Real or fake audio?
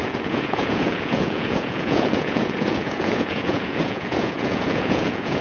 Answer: fake